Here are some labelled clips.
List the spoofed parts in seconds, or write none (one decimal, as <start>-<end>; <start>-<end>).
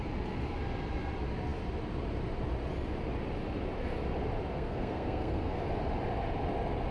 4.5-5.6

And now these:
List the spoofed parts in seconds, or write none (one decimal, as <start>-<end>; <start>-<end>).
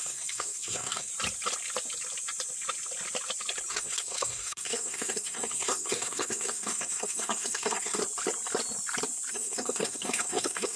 0.0-1.1; 3.7-8.0; 9.3-10.8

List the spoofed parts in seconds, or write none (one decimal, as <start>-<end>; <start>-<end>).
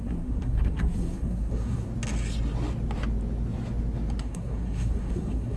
0.0-1.9; 4.2-5.6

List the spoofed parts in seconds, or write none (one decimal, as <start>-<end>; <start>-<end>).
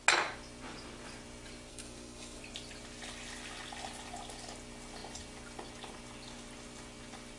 1.7-2.4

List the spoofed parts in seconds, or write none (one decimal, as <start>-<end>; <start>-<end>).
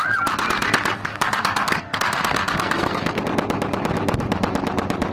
1.1-3.2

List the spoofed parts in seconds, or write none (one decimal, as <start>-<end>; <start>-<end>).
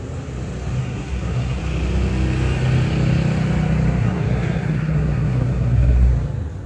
0.8-1.6; 4.0-6.1